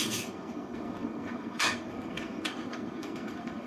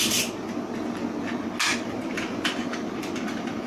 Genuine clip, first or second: second